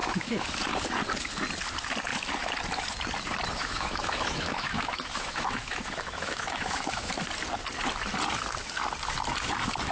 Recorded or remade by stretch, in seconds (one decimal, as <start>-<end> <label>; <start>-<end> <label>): 0.0-0.6 remade; 0.6-3.5 recorded; 3.5-7.1 remade; 7.1-9.9 recorded